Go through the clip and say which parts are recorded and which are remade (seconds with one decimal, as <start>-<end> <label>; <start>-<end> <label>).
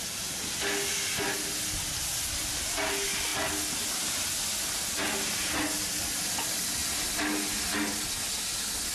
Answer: 0.0-8.9 recorded